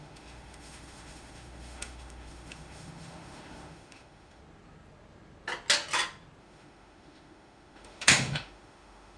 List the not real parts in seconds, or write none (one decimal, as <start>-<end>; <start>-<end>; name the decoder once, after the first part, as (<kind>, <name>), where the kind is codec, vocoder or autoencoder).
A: 0.0-4.4 (autoencoder, DAC-VAE); 6.4-9.2